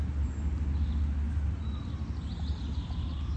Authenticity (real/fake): real